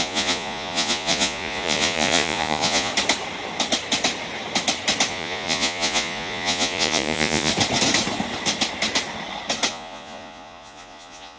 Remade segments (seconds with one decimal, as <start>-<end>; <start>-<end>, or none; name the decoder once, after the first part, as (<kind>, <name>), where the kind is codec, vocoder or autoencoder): 0.0-2.9 (vocoder, Vocos); 5.1-7.5; 9.7-11.4